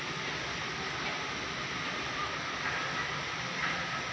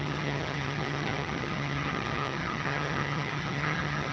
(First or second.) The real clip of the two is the first